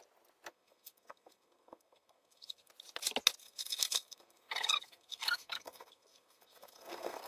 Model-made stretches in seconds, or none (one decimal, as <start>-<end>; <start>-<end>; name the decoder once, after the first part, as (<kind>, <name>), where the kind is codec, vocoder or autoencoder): 0.5-2.7 (codec, SNAC); 3.4-7.3